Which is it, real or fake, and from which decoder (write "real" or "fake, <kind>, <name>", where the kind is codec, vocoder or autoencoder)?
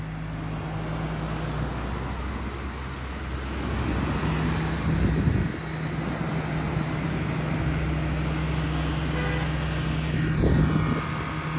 real